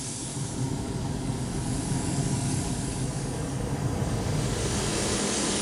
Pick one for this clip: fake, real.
fake